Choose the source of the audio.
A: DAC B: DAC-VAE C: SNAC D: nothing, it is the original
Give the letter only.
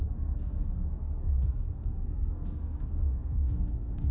C